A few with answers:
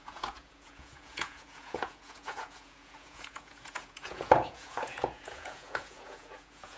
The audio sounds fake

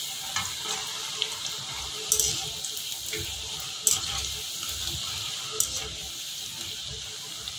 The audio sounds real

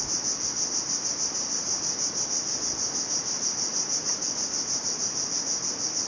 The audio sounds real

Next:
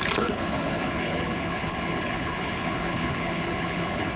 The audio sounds fake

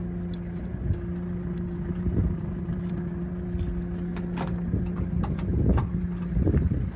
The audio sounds real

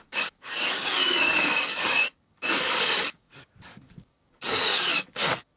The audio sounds fake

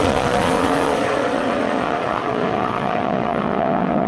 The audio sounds fake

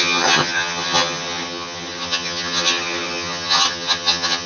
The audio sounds fake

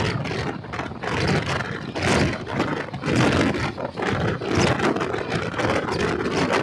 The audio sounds real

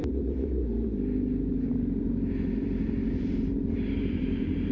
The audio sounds fake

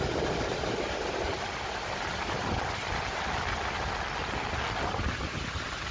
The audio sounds real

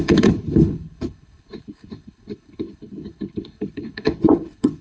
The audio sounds fake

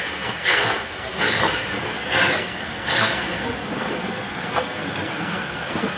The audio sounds fake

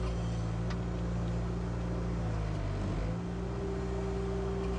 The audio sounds real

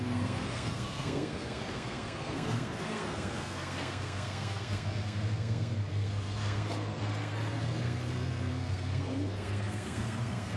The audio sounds fake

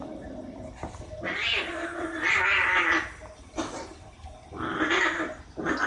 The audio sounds real